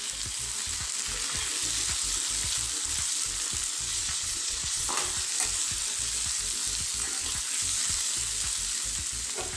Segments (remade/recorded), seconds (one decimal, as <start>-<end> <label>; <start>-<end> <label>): 0.0-3.9 recorded; 3.9-4.9 remade; 4.9-9.6 recorded